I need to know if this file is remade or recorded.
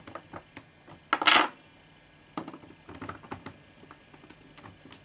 recorded